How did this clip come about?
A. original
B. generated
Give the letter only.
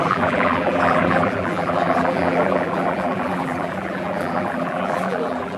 B